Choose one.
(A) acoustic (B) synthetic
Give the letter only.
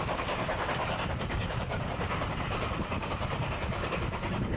B